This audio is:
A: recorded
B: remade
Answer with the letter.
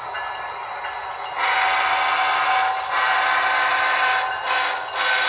A